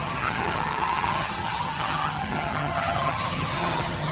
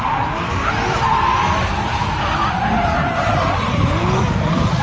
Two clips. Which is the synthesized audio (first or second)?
first